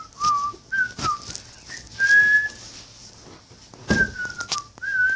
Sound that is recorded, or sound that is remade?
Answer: recorded